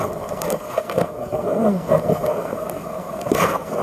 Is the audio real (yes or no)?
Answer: no